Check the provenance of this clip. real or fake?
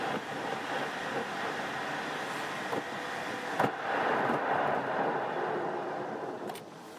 real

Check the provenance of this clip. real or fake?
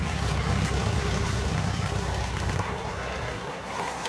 fake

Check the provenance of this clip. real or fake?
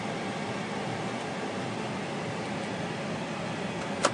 real